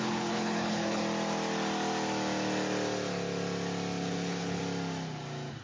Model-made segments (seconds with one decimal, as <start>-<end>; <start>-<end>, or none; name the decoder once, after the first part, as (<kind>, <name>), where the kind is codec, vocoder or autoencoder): 0.0-1.0 (codec, HILCodec); 4.0-4.6